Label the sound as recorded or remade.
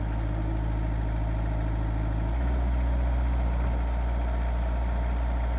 recorded